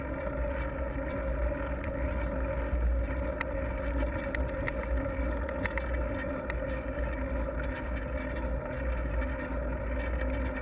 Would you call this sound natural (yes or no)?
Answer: yes